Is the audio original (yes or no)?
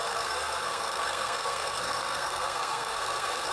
no